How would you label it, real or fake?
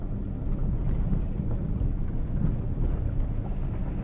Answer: real